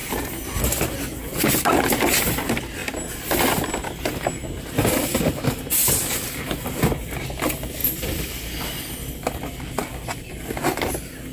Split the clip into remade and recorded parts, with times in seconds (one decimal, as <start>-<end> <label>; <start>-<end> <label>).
0.0-0.6 remade; 0.6-7.8 recorded; 7.8-10.2 remade; 10.2-11.3 recorded